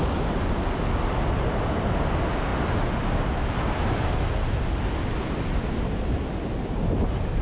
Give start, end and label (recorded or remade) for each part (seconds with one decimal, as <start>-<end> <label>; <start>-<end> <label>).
0.0-7.4 recorded

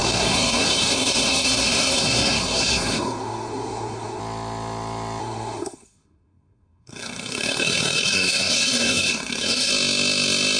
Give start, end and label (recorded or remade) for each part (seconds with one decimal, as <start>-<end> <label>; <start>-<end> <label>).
0.0-4.2 remade; 4.2-5.2 recorded; 5.2-9.7 remade; 9.7-10.6 recorded

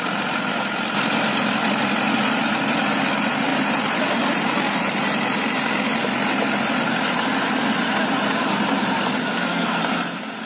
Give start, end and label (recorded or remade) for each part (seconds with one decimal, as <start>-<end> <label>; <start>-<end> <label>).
0.0-9.2 recorded; 9.2-9.8 remade; 9.8-10.5 recorded

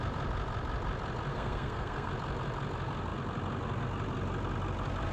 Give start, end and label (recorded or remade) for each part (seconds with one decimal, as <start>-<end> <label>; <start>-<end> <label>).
0.0-1.3 recorded; 1.3-2.1 remade; 2.1-5.1 recorded